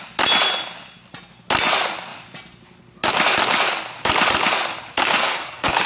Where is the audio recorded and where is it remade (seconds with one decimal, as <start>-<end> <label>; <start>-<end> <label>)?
0.0-5.2 recorded; 5.2-5.9 remade